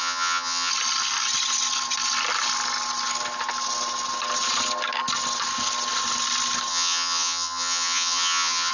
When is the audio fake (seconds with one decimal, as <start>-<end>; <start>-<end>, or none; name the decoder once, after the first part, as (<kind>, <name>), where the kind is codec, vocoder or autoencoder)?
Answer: 0.0-0.7 (vocoder, HiFi-GAN); 6.7-8.7